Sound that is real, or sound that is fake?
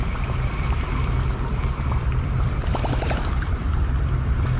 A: fake